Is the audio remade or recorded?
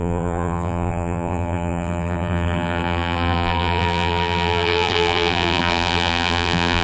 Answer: remade